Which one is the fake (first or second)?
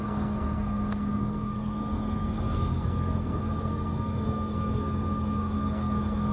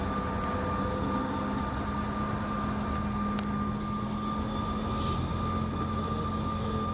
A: first